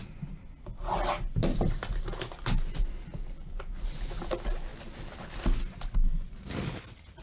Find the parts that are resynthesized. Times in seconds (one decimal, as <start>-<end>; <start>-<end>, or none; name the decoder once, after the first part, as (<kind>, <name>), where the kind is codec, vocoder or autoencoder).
none